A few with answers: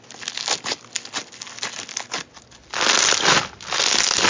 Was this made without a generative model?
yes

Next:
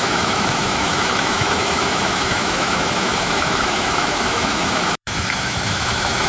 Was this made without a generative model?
no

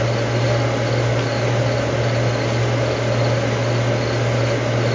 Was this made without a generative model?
yes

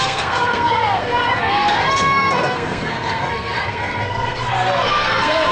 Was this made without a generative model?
no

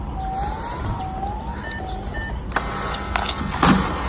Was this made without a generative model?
yes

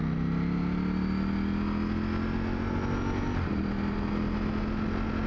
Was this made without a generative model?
yes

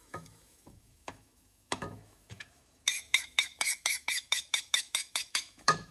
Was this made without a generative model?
no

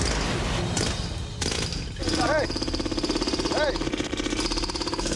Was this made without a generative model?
yes